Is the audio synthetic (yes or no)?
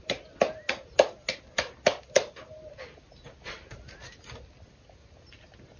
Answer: no